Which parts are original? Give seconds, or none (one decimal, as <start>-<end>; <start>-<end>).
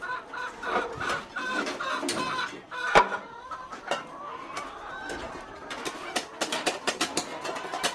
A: 0.0-7.9